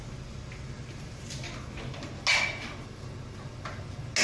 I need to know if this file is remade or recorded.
recorded